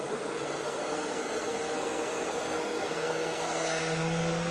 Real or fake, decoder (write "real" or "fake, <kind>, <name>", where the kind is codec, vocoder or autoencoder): fake, codec, SNAC